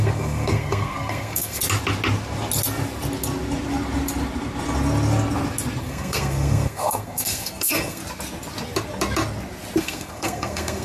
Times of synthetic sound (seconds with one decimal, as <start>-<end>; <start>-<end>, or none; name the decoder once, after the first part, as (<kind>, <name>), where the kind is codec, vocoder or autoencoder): 0.0-1.6 (codec, SNAC); 5.8-8.0; 9.8-10.8